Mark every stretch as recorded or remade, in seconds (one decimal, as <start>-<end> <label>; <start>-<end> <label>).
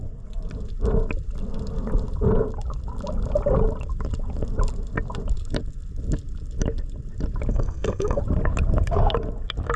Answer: 0.0-7.5 recorded; 7.5-8.2 remade; 8.2-9.8 recorded